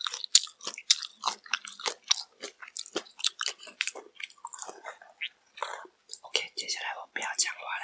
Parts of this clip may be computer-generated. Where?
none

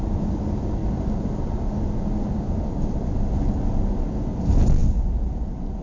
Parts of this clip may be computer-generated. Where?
none

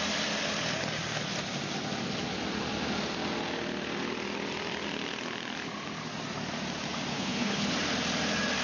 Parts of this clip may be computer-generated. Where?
7.1-7.7 (codec, HILCodec)

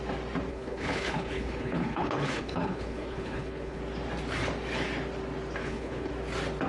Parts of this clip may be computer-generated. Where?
0.5-3.8 (codec, HILCodec); 5.6-6.1

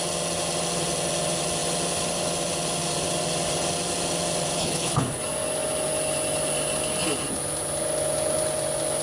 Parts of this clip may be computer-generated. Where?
4.6-5.2 (codec, HILCodec)

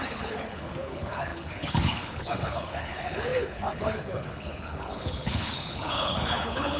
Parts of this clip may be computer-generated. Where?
0.0-6.8 (codec, HILCodec)